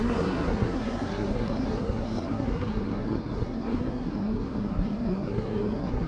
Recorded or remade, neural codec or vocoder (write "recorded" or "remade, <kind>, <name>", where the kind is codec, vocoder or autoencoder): remade, codec, SNAC